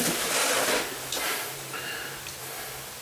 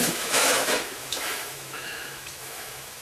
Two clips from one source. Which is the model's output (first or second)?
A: second